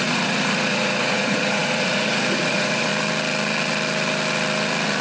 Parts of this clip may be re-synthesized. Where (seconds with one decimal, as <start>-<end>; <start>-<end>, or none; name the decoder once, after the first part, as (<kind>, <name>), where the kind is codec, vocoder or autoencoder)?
0.0-2.9 (vocoder, Vocos)